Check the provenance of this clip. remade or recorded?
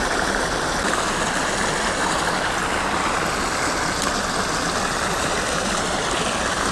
recorded